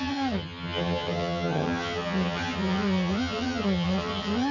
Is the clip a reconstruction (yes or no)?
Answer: yes